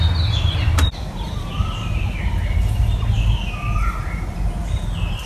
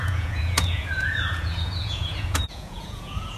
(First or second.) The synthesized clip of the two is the second